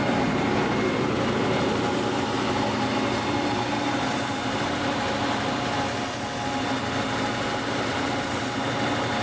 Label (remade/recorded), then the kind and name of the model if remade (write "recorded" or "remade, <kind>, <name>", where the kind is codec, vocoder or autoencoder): recorded